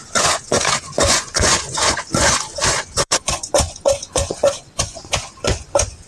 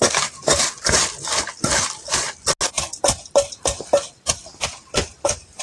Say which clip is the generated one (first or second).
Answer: first